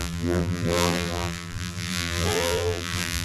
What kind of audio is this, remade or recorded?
remade